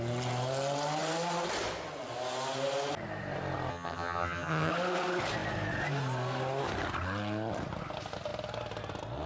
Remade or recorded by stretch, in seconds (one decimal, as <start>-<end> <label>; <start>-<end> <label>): 0.0-3.7 recorded; 3.7-4.7 remade; 4.7-9.3 recorded